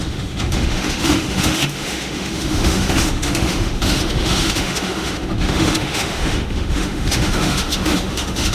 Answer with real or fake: fake